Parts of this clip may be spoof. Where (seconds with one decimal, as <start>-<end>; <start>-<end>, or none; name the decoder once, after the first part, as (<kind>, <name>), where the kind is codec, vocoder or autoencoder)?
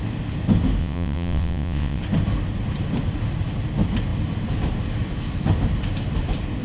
0.8-2.0 (vocoder, WaveNeXt)